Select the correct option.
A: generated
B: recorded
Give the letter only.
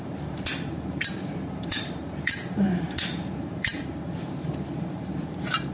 A